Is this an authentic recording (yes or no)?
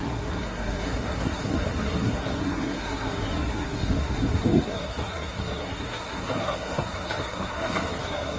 no